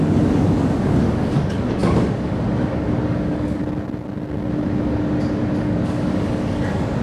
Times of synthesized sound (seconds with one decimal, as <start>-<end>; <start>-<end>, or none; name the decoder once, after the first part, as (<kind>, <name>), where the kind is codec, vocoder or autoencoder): 0.0-3.6 (codec, DAC); 5.6-7.0